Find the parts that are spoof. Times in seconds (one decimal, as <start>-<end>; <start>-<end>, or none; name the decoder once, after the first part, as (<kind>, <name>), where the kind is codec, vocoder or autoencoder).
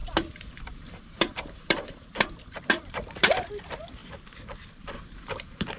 0.0-3.5 (vocoder, BigVGAN v2); 4.0-5.8